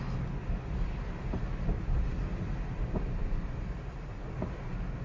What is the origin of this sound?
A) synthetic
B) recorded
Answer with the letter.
B